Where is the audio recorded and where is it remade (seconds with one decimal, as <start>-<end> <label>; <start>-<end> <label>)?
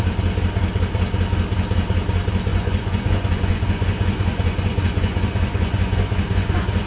0.0-2.5 recorded; 2.5-6.9 remade